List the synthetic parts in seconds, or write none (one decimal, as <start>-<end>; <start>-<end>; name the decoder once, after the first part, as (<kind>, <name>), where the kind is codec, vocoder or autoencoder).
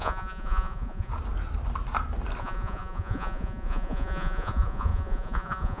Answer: 0.0-1.1 (vocoder, Vocos); 2.4-5.8